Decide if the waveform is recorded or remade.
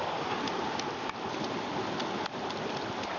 recorded